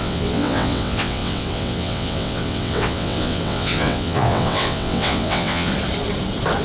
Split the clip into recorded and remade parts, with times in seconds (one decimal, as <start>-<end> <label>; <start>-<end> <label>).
0.0-5.7 remade; 5.7-6.6 recorded